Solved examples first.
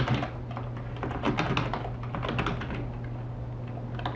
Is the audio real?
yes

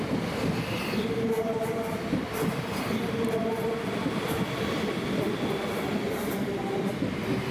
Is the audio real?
yes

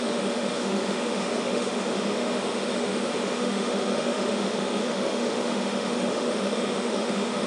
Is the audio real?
no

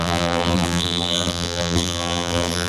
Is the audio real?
no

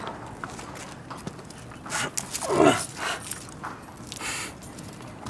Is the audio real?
yes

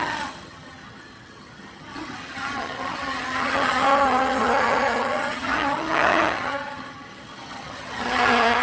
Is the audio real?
no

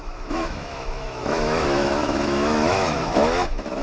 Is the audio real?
no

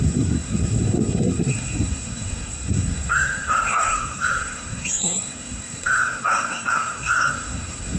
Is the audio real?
no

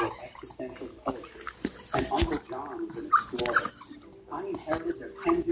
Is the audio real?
yes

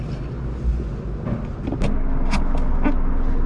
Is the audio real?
yes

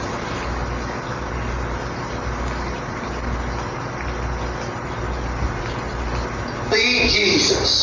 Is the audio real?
yes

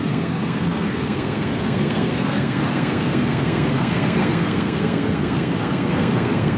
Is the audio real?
no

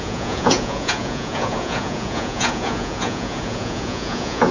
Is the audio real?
no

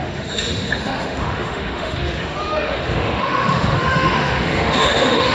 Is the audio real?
no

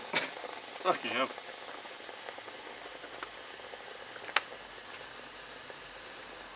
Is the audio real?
yes